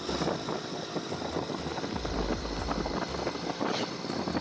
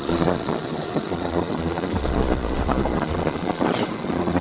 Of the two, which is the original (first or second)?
first